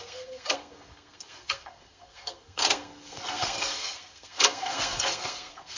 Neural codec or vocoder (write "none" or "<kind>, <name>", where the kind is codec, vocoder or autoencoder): codec, SNAC